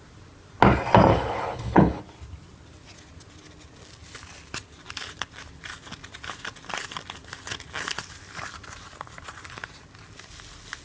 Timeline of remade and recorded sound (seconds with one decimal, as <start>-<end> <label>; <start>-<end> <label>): 0.0-1.1 recorded; 1.1-2.0 remade; 2.0-10.8 recorded